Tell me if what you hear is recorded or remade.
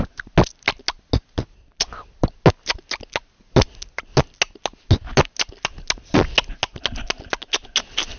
recorded